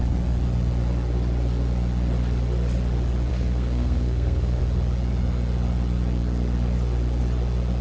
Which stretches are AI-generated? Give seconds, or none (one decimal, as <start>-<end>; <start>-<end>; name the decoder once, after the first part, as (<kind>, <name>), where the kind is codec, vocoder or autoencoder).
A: 3.3-4.6 (codec, SNAC)